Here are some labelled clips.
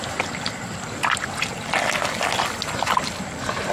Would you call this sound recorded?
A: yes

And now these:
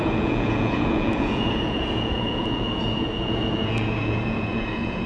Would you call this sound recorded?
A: no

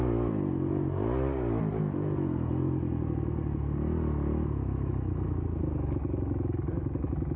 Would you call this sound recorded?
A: yes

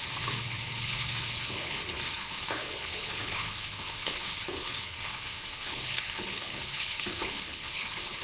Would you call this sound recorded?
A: no